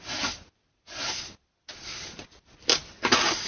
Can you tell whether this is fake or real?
real